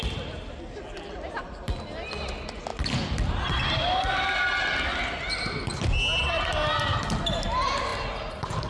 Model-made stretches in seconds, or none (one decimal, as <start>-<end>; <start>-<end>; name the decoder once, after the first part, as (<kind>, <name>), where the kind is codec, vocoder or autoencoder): none